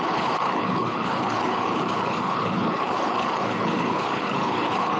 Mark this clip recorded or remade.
remade